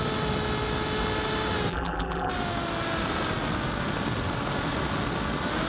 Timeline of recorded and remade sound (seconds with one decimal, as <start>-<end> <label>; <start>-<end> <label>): 0.0-1.7 recorded; 1.7-2.3 remade; 2.3-5.7 recorded